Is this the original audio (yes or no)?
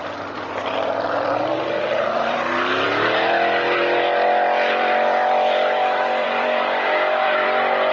no